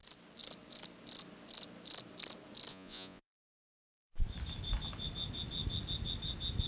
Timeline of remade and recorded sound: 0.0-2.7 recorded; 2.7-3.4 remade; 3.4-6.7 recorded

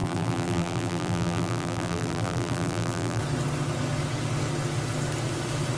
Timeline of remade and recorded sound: 0.0-3.2 remade; 3.2-5.8 recorded

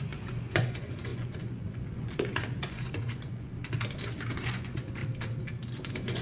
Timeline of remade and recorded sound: 0.0-3.5 remade; 3.5-4.3 recorded; 4.3-5.0 remade; 5.0-5.7 recorded; 5.7-6.2 remade

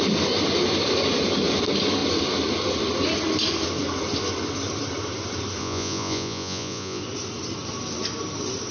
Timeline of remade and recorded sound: 0.0-5.6 recorded; 5.6-7.0 remade; 7.0-8.7 recorded